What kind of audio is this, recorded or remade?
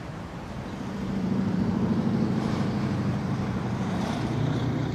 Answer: remade